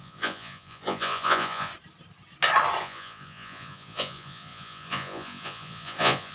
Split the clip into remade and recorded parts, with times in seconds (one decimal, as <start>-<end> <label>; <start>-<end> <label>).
0.0-1.7 remade; 1.7-2.8 recorded; 2.8-6.3 remade